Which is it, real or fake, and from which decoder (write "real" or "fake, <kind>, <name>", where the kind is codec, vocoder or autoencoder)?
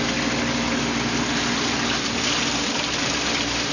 real